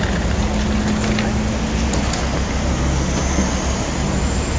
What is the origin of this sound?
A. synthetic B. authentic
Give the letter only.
B